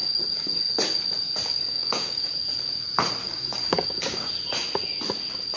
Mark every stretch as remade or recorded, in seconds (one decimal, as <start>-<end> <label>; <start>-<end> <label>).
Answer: 0.0-0.5 remade; 0.5-1.7 recorded; 1.7-2.3 remade; 2.3-3.2 recorded; 3.2-4.3 remade; 4.3-5.6 recorded